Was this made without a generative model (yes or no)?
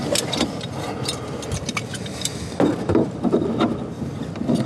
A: yes